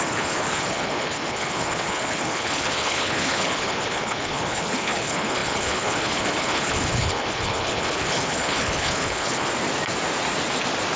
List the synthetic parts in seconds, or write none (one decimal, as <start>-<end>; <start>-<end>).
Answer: 0.0-9.5